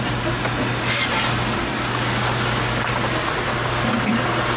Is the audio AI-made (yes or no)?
no